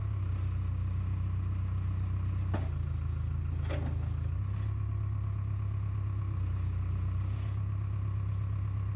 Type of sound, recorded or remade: recorded